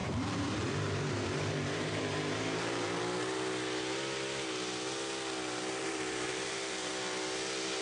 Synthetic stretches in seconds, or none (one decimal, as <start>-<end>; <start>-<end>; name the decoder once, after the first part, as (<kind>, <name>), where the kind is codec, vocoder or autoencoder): 0.0-2.9 (vocoder, BigVGAN v2); 5.8-6.9

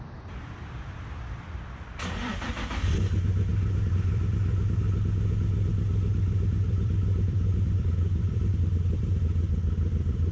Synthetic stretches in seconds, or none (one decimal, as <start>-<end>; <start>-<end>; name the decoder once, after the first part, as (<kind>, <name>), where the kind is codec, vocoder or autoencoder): 0.0-10.3 (vocoder, BigVGAN v2)

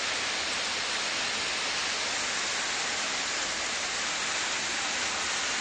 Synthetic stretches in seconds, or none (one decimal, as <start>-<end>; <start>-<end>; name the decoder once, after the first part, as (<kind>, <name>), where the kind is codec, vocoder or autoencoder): none

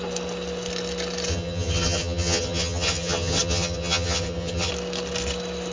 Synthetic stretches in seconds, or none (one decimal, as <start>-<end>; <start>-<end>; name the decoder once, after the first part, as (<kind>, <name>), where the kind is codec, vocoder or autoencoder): 1.3-4.7 (vocoder, HiFi-GAN)

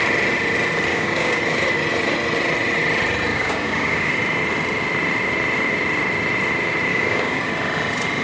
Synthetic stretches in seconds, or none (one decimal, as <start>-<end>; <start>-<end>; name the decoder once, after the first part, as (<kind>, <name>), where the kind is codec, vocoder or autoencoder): 0.9-1.4 (codec, DAC); 3.3-4.1; 6.9-7.5

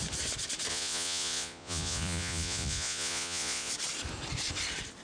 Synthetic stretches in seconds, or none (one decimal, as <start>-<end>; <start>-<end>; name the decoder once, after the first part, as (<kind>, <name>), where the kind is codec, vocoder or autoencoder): 0.7-3.7 (vocoder, Vocos)

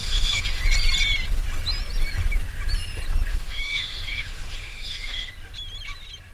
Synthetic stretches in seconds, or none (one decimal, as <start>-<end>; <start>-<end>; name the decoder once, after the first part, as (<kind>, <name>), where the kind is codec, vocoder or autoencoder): 0.0-0.6 (autoencoder, DAC-VAE); 3.3-5.3